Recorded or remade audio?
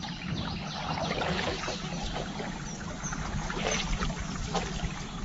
recorded